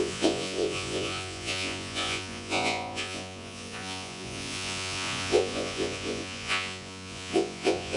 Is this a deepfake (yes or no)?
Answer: yes